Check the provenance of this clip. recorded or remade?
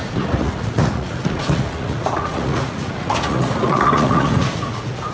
remade